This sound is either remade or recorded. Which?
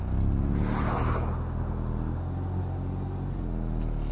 recorded